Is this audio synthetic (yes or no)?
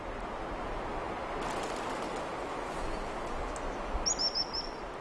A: no